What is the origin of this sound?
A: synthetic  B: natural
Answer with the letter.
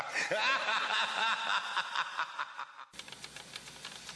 B